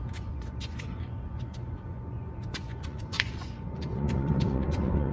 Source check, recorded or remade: remade